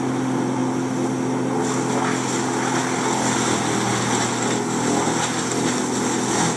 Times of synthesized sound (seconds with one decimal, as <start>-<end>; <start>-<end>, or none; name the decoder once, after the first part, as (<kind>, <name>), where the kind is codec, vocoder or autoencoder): none